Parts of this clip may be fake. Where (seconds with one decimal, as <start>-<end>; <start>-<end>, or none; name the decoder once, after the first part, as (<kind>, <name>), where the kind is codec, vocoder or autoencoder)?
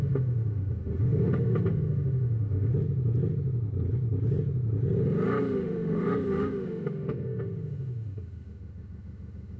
0.0-2.7 (autoencoder, DAC-VAE); 5.4-9.6